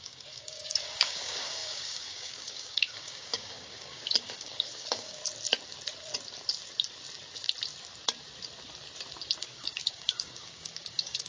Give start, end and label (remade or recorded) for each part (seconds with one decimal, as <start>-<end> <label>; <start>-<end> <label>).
0.0-5.2 remade; 5.2-9.4 recorded; 9.4-11.3 remade